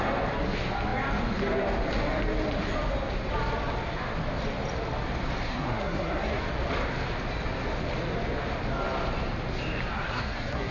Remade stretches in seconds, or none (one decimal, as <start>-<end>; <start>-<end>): 5.5-6.4; 9.9-10.7